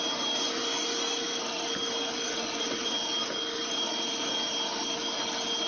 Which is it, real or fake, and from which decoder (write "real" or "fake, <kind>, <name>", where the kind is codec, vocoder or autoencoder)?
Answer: real